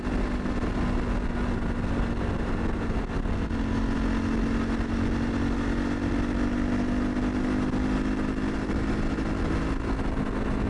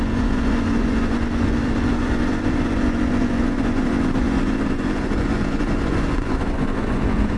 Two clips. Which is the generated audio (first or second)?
second